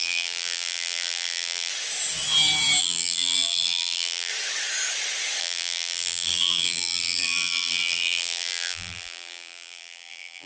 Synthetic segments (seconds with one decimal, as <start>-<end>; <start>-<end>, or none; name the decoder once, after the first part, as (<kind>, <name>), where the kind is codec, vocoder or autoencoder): 0.0-1.7 (vocoder, BigVGAN v2); 2.8-4.3; 5.4-10.5